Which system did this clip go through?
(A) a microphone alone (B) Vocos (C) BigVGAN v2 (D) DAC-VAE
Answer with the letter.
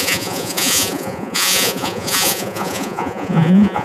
B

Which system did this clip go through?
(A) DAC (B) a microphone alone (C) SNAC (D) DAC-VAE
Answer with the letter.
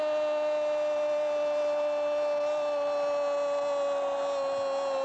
B